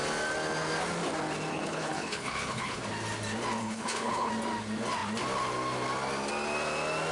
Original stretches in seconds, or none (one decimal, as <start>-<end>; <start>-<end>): 0.0-1.5; 2.8-3.6; 4.3-7.1